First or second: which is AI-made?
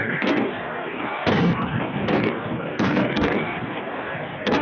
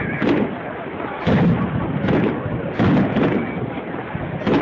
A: first